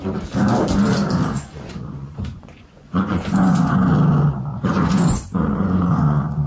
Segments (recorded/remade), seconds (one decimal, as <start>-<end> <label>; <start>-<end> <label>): 0.0-1.3 recorded; 1.3-3.9 remade; 3.9-4.5 recorded; 4.5-6.5 remade